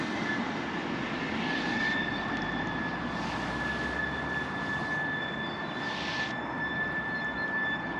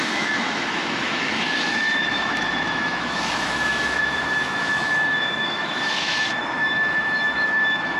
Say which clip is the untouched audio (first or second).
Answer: first